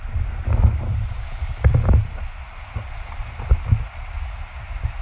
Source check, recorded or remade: recorded